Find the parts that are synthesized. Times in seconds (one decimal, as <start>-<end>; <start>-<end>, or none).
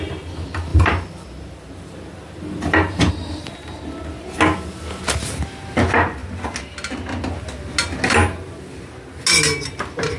0.7-3.1